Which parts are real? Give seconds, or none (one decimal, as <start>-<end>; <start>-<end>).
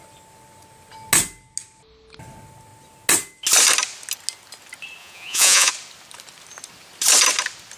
0.0-5.0; 5.7-7.8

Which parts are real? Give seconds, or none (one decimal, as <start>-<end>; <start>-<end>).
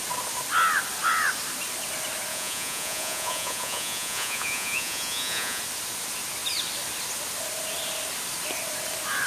0.0-2.3; 5.6-9.3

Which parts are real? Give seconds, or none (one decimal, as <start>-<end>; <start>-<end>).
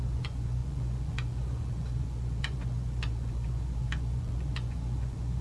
none